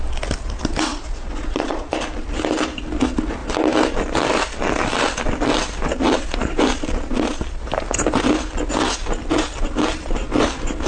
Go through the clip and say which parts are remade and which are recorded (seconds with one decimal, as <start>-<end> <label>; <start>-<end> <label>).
0.0-0.9 recorded; 0.9-1.9 remade; 1.9-10.9 recorded